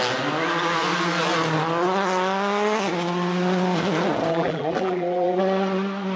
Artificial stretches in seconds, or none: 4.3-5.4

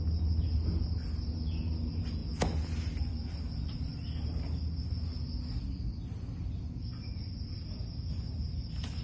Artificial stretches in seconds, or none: none

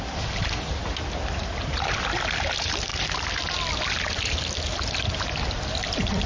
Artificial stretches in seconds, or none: 2.9-3.5

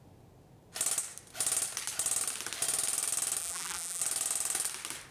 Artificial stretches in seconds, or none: 3.4-4.0

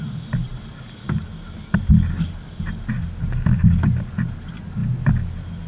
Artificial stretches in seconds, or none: 0.5-1.2

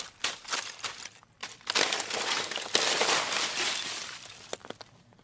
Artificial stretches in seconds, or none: 0.0-1.4; 3.3-5.2

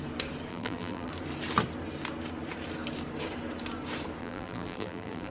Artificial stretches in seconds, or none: 0.5-1.1; 4.2-5.3

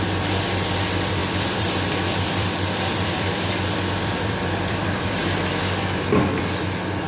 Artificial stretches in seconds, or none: 1.2-5.4